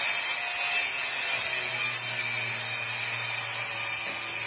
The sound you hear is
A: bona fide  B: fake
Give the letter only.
A